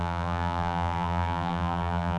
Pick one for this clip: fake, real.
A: fake